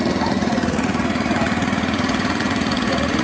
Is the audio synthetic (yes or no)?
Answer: yes